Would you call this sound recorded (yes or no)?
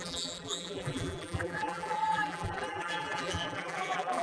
no